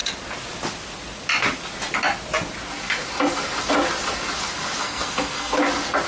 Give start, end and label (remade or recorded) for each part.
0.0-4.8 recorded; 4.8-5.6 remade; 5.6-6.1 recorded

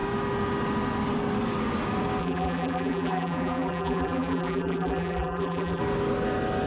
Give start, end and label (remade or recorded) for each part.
0.0-2.2 recorded; 2.2-5.8 remade; 5.8-6.7 recorded